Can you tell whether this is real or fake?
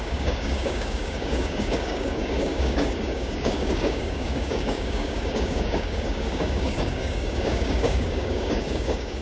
fake